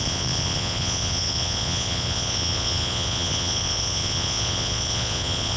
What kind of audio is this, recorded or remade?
remade